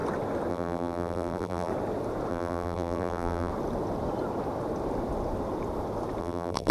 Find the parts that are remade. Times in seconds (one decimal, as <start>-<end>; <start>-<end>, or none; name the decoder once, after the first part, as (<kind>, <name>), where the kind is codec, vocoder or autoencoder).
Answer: 0.5-1.7 (vocoder, BigVGAN v2); 2.3-3.5; 6.2-6.7